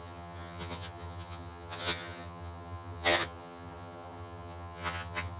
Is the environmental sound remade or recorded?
remade